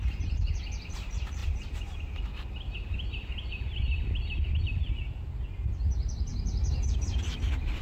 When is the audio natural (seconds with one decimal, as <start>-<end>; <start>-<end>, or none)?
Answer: none